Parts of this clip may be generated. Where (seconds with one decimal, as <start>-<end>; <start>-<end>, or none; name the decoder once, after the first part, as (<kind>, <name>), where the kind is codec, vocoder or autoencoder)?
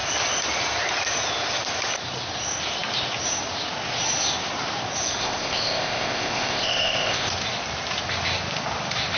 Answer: 5.2-7.3 (codec, ZipCodec)